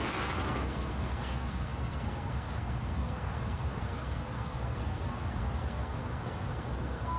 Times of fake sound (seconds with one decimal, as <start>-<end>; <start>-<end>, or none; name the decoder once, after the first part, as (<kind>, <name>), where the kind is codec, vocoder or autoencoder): 0.0-7.2 (codec, SNAC)